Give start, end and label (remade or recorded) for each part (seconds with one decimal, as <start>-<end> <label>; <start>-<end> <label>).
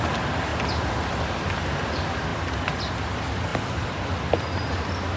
0.0-0.5 recorded; 0.5-1.5 remade; 1.5-3.5 recorded; 3.5-4.2 remade; 4.2-5.2 recorded